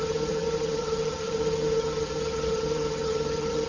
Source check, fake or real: fake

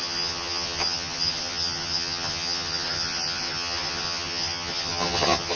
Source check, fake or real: fake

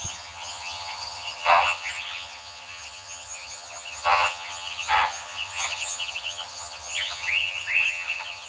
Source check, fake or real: fake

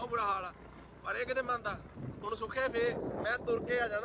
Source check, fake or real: real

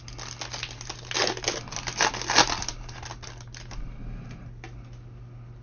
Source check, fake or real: real